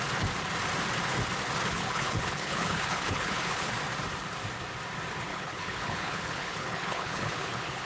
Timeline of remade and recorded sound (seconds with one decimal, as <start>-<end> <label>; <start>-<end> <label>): 0.0-1.7 recorded; 1.7-3.7 remade; 3.7-5.3 recorded; 5.3-7.9 remade

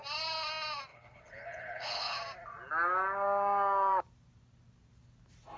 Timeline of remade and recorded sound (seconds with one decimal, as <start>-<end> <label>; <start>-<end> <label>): 0.0-0.9 recorded; 0.9-2.2 remade; 2.2-5.6 recorded

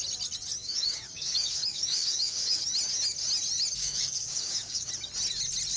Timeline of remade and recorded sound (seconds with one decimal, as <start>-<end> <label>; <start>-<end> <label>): 0.0-0.6 recorded; 0.6-2.6 remade; 2.6-3.8 recorded; 3.8-4.9 remade; 4.9-5.8 recorded

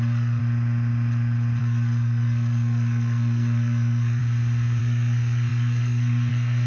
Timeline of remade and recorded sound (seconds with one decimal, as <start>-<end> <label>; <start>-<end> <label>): 0.0-0.4 remade; 0.4-1.6 recorded; 1.6-4.2 remade; 4.2-4.8 recorded; 4.8-6.7 remade